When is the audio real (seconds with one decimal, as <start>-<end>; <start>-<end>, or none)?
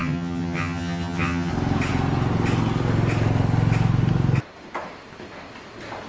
1.5-6.1